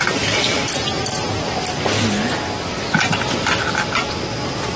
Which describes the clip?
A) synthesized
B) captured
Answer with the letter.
B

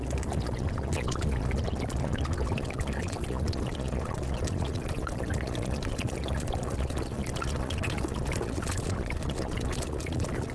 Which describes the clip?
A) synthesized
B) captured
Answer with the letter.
A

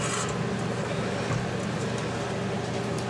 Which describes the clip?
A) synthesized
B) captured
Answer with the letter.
B